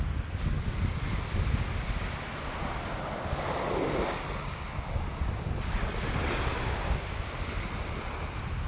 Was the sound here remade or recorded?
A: recorded